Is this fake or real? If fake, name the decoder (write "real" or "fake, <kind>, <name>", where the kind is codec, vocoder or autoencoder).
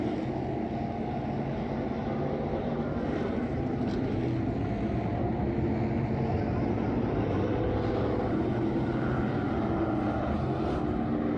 real